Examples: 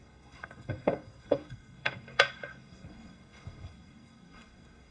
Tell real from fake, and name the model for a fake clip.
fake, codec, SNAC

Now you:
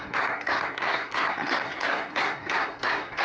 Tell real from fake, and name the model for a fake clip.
fake, codec, SNAC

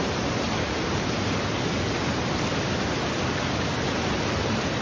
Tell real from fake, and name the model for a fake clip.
real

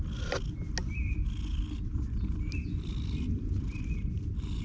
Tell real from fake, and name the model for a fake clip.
real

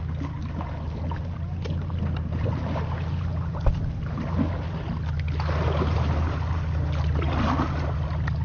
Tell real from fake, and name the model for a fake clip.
real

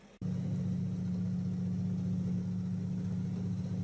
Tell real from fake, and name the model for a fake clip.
real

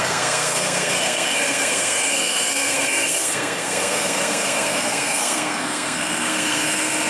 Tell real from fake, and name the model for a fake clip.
fake, codec, SNAC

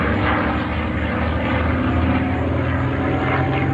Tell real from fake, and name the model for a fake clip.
real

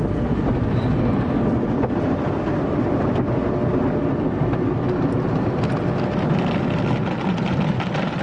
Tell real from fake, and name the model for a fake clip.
real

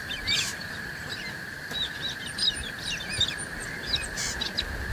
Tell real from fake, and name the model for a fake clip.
real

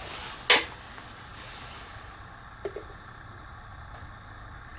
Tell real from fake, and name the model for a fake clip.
real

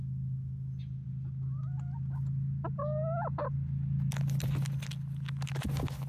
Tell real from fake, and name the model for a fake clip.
real